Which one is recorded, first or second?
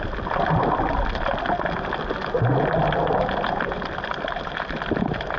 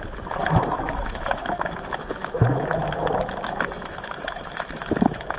first